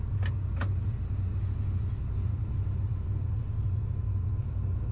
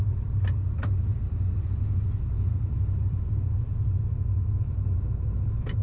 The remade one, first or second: second